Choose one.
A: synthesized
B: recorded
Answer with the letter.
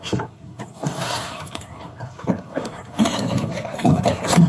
A